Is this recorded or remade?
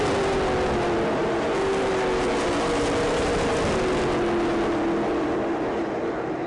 recorded